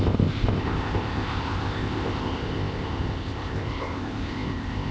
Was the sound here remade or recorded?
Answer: remade